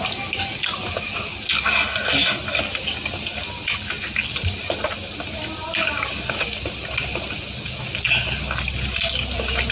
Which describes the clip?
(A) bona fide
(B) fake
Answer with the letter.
A